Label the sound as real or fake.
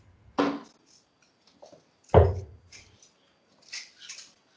real